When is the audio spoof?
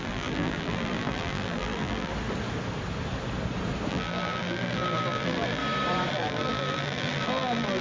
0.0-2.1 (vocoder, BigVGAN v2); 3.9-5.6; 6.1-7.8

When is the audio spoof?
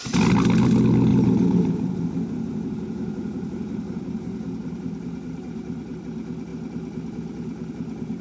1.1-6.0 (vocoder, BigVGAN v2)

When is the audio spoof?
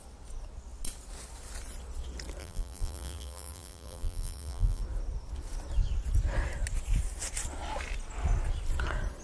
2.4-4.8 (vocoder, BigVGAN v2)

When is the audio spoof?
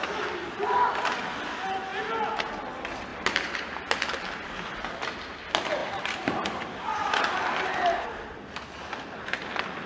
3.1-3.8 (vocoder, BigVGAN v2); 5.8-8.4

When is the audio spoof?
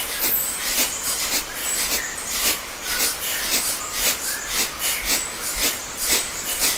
0.0-1.6 (vocoder, BigVGAN v2); 5.7-6.8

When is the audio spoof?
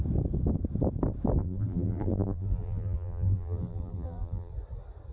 1.4-4.5 (vocoder, BigVGAN v2)